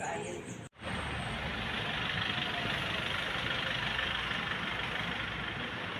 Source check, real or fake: real